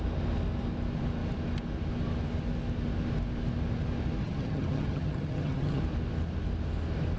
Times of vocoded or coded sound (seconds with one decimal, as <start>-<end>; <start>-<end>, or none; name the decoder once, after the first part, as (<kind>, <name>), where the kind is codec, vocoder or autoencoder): 4.2-5.8 (vocoder, HiFi-GAN)